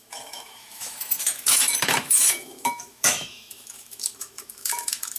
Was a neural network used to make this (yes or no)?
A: yes